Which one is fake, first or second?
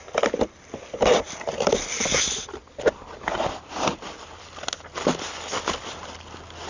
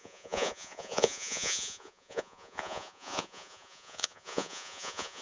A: second